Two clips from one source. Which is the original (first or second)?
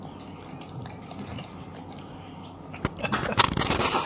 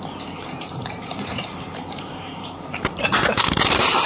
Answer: first